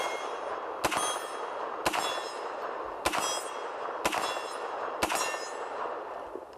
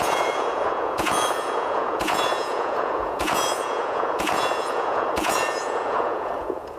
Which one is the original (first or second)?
first